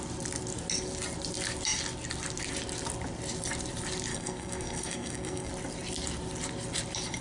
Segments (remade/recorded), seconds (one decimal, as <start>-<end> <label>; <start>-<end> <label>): 0.0-4.1 recorded; 4.1-5.5 remade; 5.5-7.2 recorded